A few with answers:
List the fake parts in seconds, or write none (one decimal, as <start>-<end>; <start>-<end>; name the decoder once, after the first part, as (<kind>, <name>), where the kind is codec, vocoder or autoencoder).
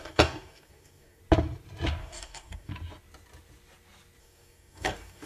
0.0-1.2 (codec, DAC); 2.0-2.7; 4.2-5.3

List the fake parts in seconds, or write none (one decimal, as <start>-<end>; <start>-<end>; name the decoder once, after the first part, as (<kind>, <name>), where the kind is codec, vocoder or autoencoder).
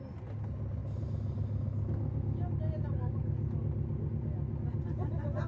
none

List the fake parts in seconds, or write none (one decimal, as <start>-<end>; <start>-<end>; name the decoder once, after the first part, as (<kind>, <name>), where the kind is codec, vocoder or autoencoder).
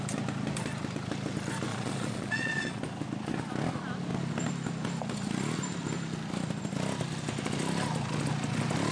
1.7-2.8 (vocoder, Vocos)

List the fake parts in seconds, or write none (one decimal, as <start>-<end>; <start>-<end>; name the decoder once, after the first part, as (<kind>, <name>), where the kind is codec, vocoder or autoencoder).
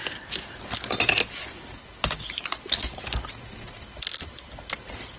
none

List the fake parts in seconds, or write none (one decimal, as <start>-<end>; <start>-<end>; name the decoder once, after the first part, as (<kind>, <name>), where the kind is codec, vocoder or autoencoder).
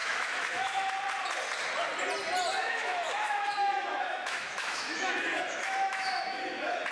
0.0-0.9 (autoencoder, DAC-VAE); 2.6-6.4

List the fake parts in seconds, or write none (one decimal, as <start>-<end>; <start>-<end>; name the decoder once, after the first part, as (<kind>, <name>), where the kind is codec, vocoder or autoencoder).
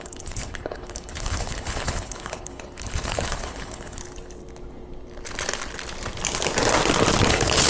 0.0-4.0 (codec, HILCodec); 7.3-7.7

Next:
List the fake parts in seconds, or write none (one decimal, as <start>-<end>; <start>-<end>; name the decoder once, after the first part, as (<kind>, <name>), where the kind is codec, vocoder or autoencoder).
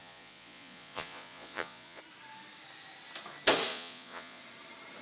0.0-2.0 (vocoder, Vocos); 3.7-4.4